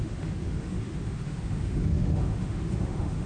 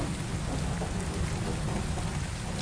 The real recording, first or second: second